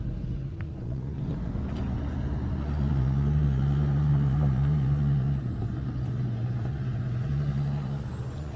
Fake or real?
fake